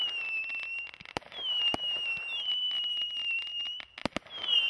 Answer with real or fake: real